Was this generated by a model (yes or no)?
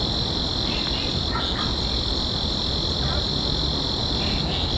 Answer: no